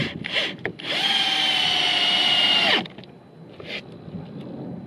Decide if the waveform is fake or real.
real